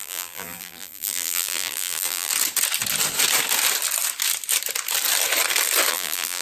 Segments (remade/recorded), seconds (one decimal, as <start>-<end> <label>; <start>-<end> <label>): 0.0-2.3 remade; 2.3-5.9 recorded; 5.9-6.4 remade